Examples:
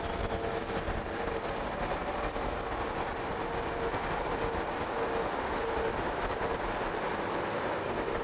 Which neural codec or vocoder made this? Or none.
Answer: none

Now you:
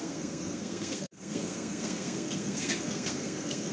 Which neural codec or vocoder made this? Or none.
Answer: codec, SNAC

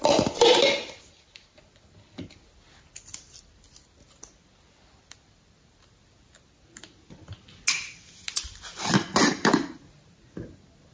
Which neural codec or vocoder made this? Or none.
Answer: none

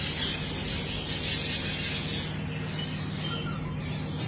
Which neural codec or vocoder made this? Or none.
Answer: none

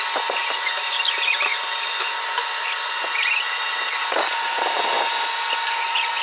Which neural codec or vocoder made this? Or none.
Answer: none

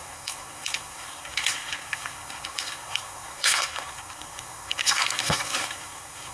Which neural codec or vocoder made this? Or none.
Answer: codec, SNAC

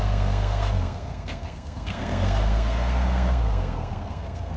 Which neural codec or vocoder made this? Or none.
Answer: codec, SNAC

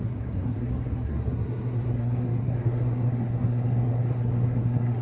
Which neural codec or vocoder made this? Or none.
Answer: codec, SNAC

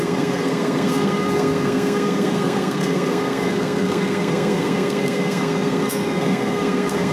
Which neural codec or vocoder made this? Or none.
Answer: codec, SNAC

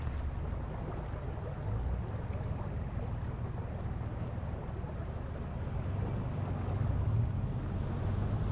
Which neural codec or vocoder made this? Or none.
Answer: none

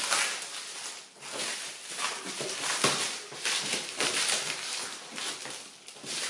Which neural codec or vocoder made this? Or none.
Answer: none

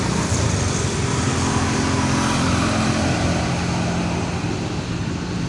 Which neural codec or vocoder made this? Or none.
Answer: none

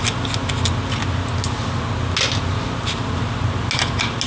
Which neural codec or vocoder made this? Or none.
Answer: none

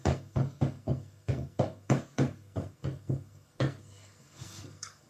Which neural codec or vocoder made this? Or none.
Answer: codec, SNAC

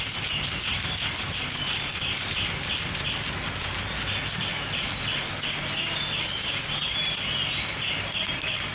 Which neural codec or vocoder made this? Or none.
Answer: none